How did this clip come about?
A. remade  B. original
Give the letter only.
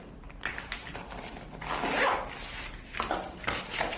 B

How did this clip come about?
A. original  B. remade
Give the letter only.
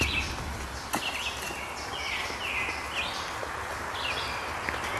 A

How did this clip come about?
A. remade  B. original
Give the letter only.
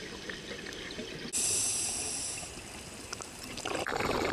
B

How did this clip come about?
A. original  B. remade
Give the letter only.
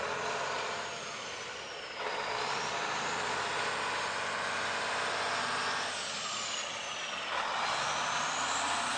A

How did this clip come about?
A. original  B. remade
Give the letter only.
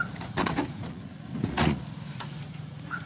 B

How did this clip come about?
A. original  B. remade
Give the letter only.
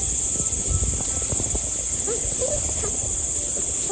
A